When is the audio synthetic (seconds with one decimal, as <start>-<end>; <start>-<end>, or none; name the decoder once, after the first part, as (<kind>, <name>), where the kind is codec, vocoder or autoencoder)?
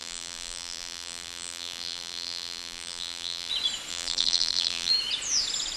0.0-3.5 (vocoder, BigVGAN v2); 3.9-4.9